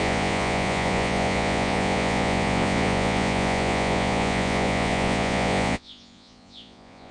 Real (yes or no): no